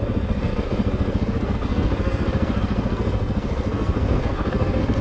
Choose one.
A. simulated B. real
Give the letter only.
A